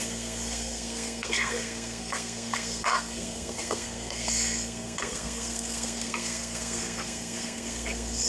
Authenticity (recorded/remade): remade